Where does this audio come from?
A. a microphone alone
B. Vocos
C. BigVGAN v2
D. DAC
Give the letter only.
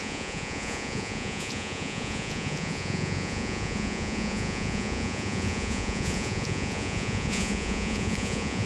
B